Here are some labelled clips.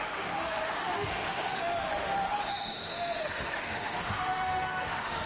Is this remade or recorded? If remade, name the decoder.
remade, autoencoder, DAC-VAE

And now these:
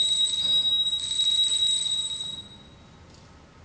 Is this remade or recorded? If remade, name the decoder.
recorded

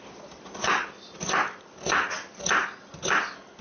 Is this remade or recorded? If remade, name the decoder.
recorded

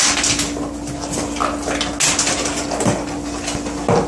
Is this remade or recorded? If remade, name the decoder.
recorded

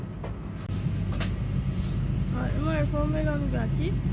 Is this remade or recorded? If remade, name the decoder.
recorded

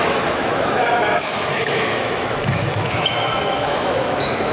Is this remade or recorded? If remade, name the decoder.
remade, autoencoder, DAC-VAE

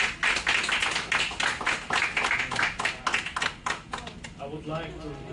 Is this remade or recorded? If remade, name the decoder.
recorded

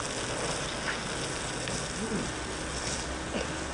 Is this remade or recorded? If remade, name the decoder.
recorded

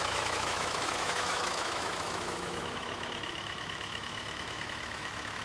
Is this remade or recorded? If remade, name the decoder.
remade, autoencoder, DAC-VAE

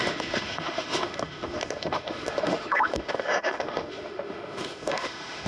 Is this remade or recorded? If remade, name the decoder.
remade, autoencoder, DAC-VAE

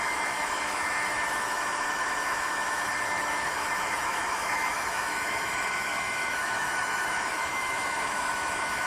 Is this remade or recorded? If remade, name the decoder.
remade, autoencoder, DAC-VAE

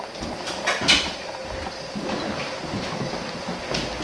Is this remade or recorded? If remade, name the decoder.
recorded